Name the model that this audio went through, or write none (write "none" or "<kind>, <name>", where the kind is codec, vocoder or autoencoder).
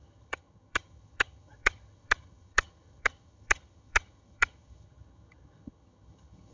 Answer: vocoder, HiFi-GAN